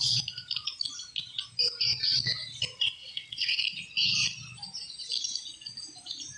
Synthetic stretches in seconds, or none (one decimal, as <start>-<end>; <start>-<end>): 3.0-3.6